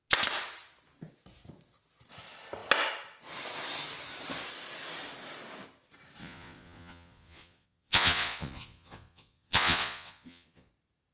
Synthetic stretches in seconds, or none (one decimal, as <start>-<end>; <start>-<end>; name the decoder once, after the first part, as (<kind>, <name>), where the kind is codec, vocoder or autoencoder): 6.2-10.7 (vocoder, Vocos)